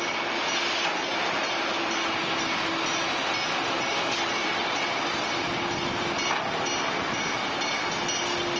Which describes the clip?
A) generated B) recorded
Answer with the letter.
B